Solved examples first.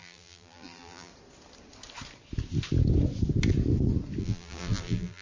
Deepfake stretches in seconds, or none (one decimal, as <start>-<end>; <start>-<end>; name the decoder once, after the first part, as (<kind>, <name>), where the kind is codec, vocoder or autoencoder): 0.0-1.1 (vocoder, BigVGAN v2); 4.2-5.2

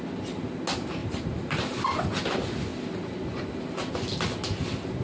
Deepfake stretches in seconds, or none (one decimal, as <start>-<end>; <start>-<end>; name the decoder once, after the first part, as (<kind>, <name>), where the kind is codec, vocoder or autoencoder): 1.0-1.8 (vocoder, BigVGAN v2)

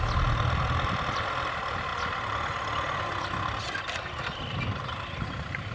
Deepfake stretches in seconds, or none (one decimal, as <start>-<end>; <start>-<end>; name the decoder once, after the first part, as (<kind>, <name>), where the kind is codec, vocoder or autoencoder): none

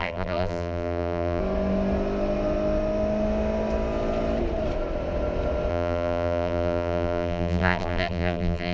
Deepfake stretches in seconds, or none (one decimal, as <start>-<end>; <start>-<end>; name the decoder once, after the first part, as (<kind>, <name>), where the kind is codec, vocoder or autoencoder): 0.0-1.4 (vocoder, BigVGAN v2); 5.7-8.7

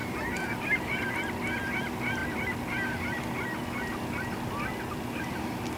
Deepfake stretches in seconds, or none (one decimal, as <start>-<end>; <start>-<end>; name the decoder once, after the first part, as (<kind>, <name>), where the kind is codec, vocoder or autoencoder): 0.0-1.1 (vocoder, BigVGAN v2)